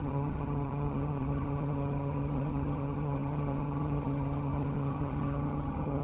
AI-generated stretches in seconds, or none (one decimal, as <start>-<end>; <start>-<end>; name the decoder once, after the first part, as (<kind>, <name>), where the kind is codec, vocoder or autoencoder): 0.0-6.0 (vocoder, HiFi-GAN)